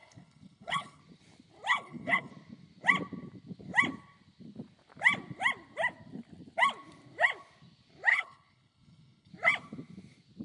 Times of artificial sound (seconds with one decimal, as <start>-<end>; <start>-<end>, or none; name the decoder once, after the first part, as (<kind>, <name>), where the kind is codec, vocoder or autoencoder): 0.0-1.0 (codec, HILCodec); 1.7-2.3; 8.1-9.3